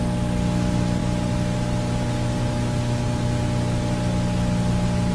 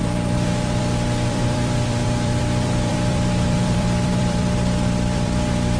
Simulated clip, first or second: second